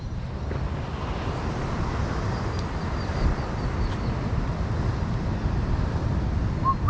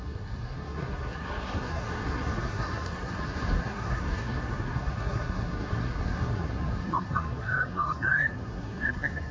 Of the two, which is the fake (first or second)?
second